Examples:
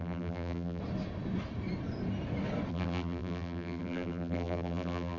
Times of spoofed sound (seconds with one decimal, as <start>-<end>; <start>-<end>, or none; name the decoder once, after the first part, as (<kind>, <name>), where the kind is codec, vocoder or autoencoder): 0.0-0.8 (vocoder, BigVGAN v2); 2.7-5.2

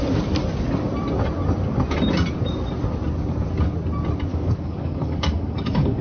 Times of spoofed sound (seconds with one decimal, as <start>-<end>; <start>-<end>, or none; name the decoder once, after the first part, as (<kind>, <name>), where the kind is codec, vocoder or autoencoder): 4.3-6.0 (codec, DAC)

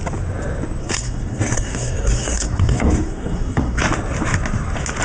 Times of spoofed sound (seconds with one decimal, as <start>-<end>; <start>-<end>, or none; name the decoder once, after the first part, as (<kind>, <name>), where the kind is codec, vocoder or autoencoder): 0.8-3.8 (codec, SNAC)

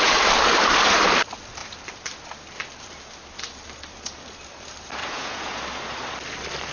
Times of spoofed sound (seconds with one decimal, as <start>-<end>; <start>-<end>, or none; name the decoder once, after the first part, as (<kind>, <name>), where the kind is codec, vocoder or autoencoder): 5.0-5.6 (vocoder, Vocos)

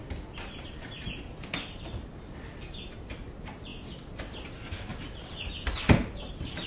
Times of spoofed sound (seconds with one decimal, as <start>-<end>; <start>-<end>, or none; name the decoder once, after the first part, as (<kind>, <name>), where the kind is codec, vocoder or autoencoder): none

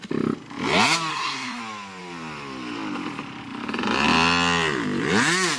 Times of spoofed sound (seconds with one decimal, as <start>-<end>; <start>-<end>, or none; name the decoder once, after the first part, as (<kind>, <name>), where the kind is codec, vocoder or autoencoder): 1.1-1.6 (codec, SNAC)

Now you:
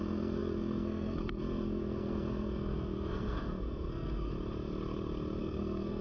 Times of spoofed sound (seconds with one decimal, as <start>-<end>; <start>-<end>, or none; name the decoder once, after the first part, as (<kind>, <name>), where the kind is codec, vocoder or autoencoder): 0.0-4.3 (codec, SNAC); 5.4-6.0